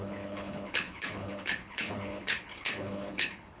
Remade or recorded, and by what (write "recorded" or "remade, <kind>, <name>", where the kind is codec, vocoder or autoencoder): remade, codec, HILCodec